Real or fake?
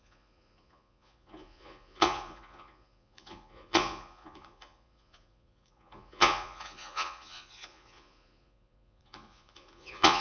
fake